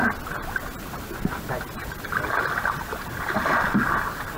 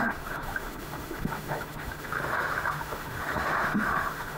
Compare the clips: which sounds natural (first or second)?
first